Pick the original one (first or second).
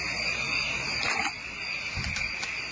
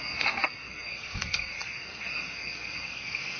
first